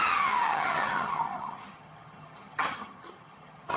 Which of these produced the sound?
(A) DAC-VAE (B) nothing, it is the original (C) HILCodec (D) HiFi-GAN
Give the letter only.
D